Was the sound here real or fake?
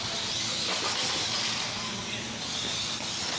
real